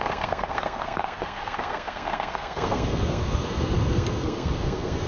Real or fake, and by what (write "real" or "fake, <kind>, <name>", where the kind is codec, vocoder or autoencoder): fake, codec, SNAC